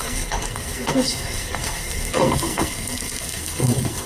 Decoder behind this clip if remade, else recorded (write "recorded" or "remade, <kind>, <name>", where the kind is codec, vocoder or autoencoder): remade, codec, SNAC